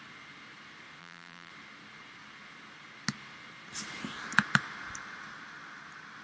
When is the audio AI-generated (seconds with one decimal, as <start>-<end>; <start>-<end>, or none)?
1.0-1.5